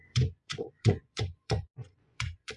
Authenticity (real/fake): fake